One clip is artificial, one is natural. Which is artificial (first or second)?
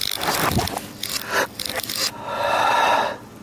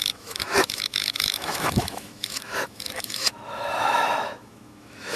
second